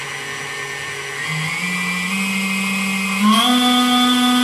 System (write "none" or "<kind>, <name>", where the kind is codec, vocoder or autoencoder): none